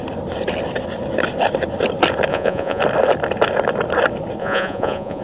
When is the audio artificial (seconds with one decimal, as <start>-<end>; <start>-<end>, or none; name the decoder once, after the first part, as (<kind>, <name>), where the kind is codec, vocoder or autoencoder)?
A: 2.3-2.8 (vocoder, Vocos); 4.4-5.2